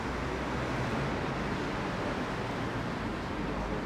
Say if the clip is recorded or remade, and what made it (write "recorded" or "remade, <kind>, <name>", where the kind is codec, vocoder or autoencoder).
recorded